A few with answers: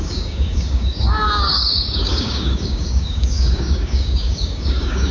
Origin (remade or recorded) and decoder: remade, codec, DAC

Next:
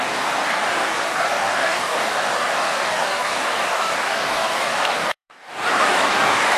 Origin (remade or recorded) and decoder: remade, codec, DAC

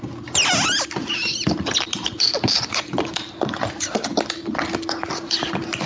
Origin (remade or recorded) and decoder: recorded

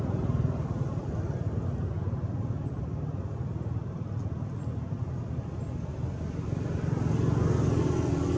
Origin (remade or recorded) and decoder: recorded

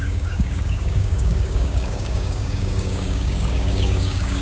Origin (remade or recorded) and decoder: remade, codec, DAC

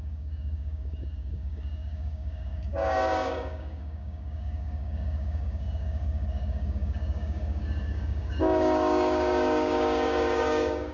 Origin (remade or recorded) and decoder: remade, codec, DAC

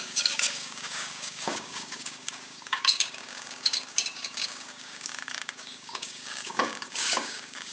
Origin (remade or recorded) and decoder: remade, codec, DAC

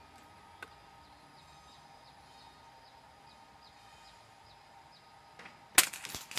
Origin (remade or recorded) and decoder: recorded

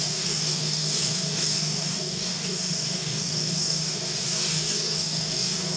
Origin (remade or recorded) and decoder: remade, codec, DAC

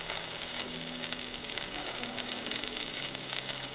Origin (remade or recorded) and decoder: remade, codec, DAC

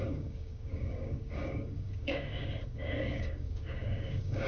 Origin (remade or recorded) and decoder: remade, codec, DAC